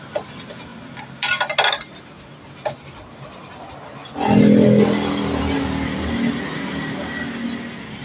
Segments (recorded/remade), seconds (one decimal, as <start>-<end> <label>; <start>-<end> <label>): 0.0-8.0 recorded